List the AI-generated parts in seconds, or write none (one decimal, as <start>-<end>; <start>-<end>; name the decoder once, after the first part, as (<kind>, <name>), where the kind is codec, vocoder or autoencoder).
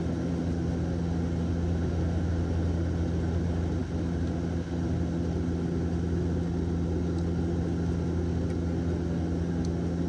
none